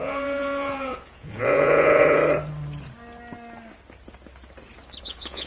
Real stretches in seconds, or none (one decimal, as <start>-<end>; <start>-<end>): 2.2-5.0